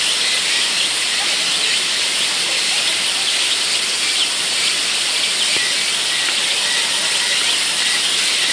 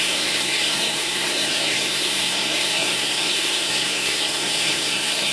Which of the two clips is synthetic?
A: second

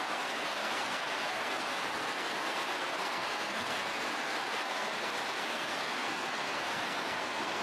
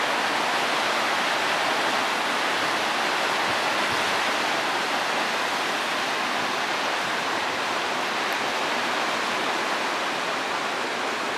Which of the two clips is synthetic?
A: first